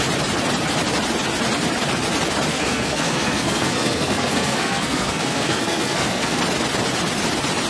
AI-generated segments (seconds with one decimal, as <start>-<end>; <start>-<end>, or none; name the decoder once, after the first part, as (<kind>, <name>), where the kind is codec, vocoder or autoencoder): 2.5-6.4 (codec, SNAC)